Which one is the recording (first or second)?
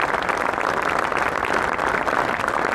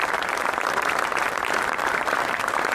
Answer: first